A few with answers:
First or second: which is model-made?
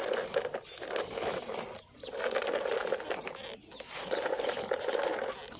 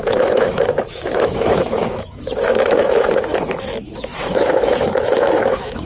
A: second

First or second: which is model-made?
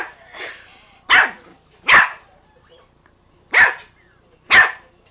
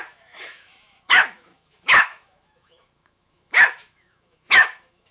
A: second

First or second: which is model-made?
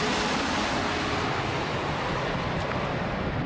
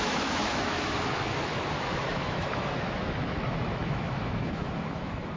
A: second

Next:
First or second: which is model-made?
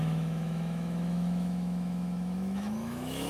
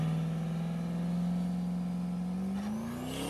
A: first